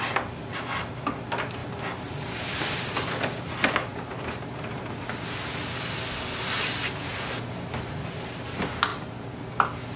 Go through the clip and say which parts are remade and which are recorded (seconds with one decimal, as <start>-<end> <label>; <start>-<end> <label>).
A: 0.0-1.6 recorded; 1.6-2.6 remade; 2.6-8.9 recorded; 8.9-9.4 remade; 9.4-10.0 recorded